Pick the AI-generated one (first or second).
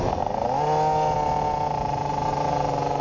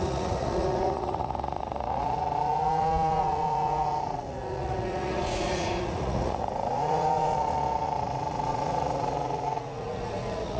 second